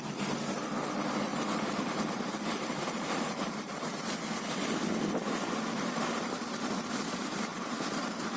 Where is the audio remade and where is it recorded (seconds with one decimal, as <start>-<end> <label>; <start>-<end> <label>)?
0.0-1.3 recorded; 1.3-4.1 remade; 4.1-8.4 recorded